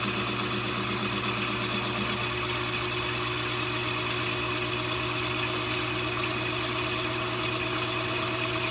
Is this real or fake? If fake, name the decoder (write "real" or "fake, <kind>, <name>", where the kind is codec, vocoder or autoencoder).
real